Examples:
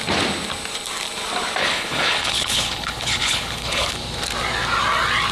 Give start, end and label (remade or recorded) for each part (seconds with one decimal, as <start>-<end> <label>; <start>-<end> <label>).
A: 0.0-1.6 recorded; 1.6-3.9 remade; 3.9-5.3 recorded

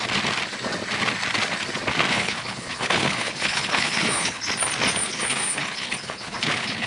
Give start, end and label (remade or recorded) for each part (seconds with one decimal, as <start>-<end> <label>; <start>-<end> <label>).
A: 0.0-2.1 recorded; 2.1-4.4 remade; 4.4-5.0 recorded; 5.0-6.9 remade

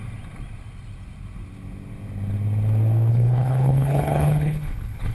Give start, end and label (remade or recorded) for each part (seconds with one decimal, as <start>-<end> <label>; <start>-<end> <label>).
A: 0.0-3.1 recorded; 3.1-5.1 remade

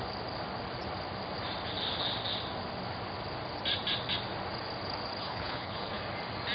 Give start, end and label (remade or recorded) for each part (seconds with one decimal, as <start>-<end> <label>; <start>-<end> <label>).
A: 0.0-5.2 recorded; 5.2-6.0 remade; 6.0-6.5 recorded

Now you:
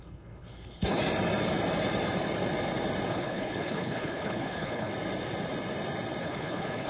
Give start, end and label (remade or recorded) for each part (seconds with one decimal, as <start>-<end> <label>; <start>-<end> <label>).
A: 0.0-1.0 remade; 1.0-3.1 recorded; 3.1-4.9 remade; 4.9-6.2 recorded; 6.2-6.9 remade